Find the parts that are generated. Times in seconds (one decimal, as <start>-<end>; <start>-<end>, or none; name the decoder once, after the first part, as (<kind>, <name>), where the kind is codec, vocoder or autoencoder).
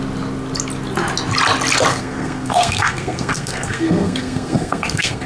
1.9-5.3 (codec, SNAC)